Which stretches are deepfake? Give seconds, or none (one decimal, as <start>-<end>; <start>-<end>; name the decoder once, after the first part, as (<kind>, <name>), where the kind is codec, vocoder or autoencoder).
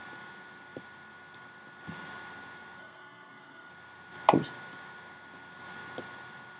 2.8-3.7 (codec, SNAC)